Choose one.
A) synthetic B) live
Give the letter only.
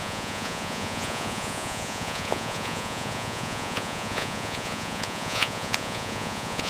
A